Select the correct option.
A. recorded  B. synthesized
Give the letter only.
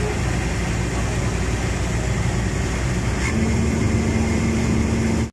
A